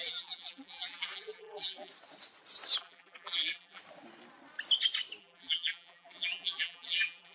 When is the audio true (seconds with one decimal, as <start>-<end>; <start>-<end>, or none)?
1.9-2.8; 3.8-5.2